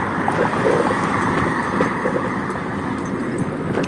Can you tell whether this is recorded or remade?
recorded